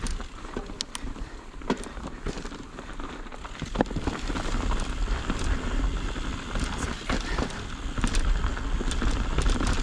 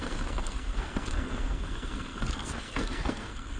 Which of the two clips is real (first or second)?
first